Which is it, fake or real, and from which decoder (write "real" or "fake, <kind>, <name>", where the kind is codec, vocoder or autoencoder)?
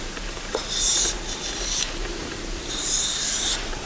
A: fake, vocoder, BigVGAN v2